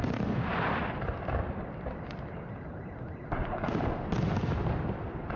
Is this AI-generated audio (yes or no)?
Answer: yes